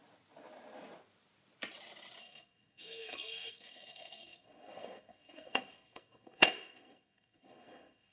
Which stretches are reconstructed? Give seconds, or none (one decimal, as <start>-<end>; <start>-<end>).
2.2-8.1